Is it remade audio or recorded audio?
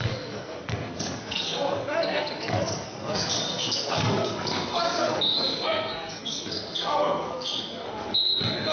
remade